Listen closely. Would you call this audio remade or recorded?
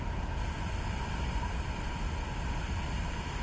recorded